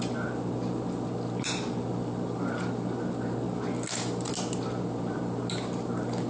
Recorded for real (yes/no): yes